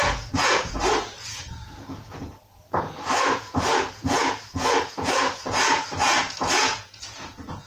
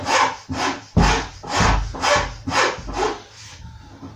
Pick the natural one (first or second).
second